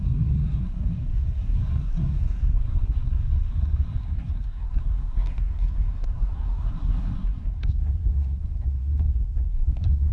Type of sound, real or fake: fake